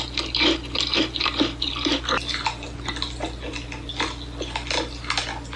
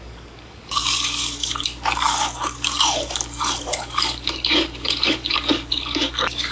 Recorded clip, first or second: first